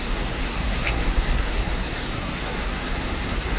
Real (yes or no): no